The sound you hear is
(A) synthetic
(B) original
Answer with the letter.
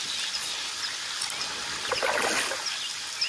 B